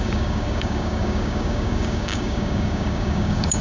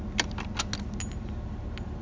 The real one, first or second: second